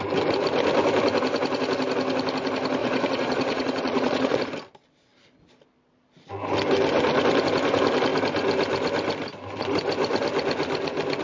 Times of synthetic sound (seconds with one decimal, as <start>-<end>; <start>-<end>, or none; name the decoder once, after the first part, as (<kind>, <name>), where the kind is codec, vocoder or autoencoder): 2.8-4.4 (vocoder, Vocos)